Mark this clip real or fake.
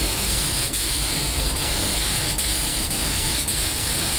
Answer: fake